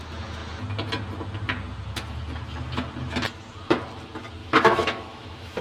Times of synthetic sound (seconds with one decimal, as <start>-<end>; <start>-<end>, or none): 4.4-5.6